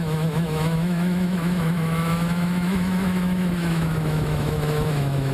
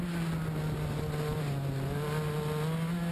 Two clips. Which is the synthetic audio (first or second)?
first